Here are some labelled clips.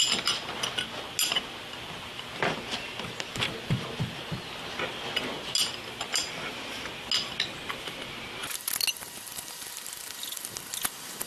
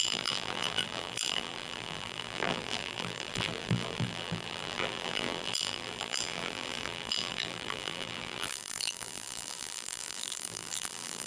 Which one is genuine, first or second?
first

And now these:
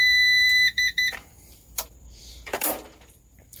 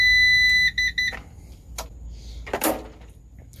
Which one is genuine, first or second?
second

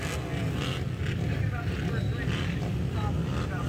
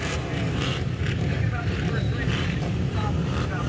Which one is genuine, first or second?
first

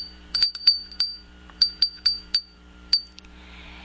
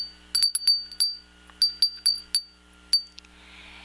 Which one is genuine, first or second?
second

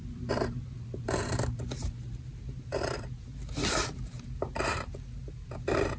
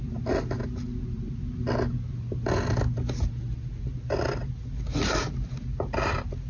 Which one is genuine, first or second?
second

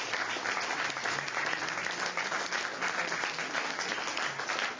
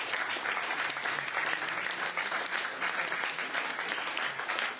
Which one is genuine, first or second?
first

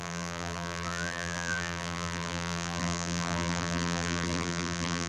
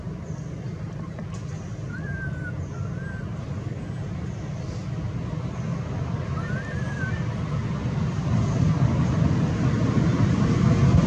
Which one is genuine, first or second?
second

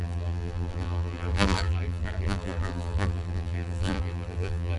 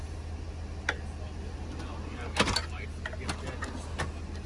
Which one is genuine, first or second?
second